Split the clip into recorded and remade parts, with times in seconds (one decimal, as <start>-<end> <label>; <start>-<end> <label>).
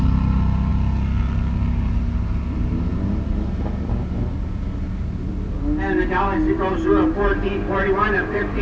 0.0-8.6 recorded